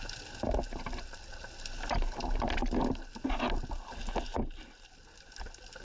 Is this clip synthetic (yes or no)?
no